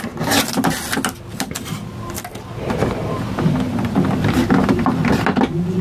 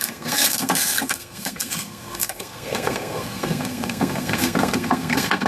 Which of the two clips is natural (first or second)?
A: first